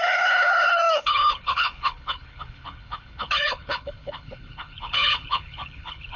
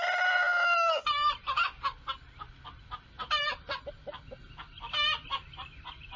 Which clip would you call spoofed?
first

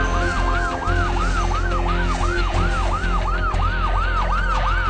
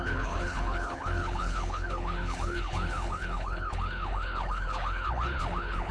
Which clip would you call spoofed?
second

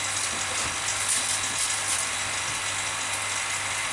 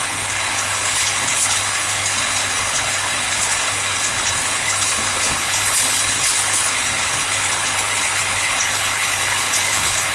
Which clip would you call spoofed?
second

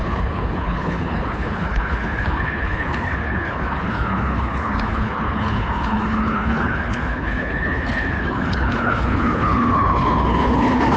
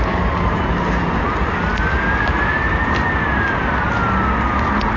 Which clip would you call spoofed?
first